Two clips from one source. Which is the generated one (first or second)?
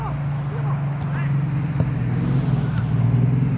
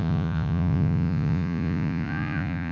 second